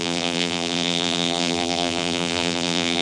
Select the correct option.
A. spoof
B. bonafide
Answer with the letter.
A